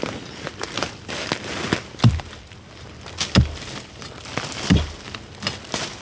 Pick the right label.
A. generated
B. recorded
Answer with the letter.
B